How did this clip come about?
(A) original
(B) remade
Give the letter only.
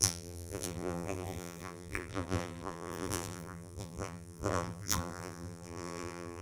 B